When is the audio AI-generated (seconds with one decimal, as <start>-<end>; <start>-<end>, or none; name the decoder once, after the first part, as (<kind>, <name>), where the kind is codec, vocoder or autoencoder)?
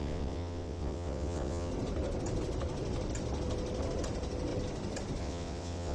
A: 0.0-1.7 (vocoder, WaveNeXt); 5.2-5.9